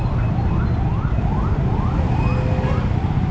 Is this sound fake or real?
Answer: real